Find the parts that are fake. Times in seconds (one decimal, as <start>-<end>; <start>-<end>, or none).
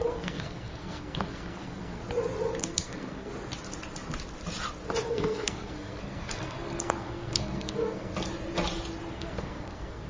0.0-2.0; 2.6-3.3; 5.1-8.1; 9.1-10.1